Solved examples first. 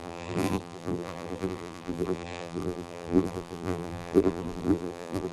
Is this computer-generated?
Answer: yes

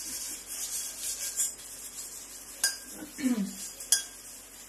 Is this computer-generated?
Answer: no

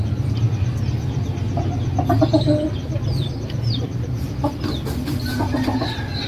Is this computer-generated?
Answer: no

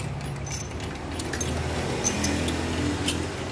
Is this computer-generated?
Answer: no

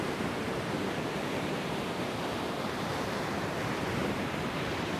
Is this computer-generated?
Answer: yes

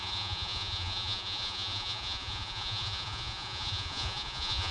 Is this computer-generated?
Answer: yes